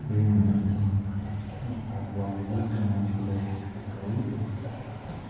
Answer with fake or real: real